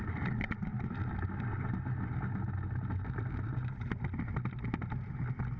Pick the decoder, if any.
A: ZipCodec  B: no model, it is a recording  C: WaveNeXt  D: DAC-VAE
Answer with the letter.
B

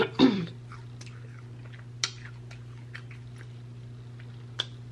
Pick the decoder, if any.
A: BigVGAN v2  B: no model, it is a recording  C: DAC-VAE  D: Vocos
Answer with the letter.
B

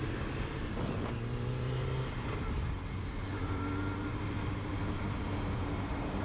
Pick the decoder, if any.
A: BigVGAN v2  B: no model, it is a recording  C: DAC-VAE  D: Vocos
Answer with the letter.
B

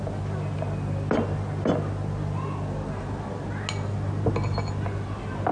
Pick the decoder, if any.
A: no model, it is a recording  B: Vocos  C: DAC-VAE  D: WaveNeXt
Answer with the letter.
A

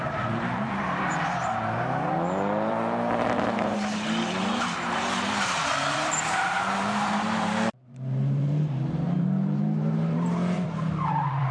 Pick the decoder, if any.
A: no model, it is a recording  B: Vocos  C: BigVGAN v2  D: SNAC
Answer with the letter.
C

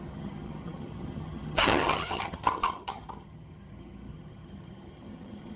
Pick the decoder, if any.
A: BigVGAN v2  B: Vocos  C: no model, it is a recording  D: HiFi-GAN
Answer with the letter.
D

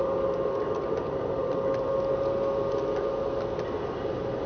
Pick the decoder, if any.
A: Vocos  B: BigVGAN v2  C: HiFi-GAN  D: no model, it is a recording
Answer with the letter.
D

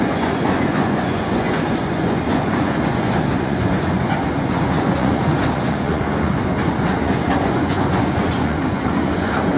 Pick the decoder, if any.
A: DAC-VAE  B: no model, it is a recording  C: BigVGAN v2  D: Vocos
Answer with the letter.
D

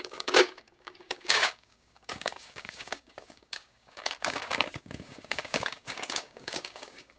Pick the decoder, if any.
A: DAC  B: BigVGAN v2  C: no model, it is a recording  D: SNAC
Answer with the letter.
A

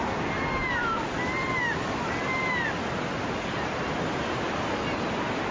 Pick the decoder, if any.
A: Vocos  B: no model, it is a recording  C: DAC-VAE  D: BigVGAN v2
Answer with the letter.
B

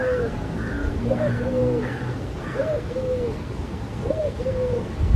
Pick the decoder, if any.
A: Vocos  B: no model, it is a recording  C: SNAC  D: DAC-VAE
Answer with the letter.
C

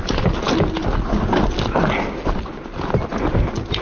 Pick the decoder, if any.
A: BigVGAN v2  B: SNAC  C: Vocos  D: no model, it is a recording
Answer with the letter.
D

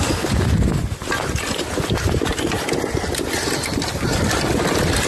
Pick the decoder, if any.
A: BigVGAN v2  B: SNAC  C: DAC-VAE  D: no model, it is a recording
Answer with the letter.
D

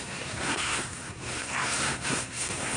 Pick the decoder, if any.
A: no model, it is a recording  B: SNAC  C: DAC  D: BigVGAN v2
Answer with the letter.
B